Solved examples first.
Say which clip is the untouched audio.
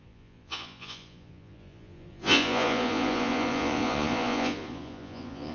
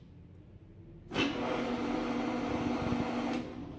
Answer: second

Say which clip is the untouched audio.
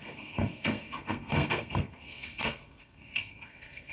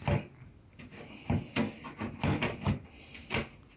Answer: second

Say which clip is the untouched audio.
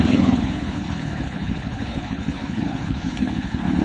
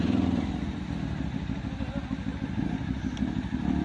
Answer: second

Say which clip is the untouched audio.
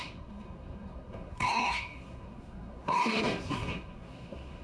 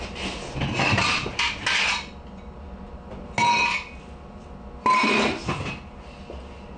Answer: second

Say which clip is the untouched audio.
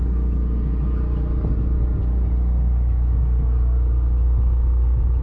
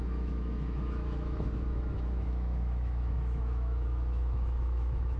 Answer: first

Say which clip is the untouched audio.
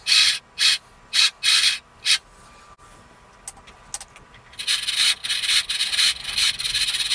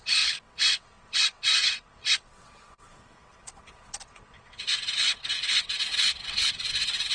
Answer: first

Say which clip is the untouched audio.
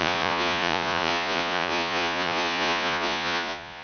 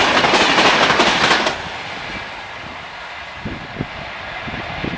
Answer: second